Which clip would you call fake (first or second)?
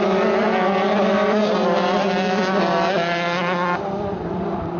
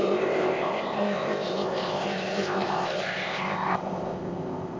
second